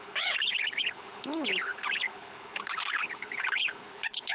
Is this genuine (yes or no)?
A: no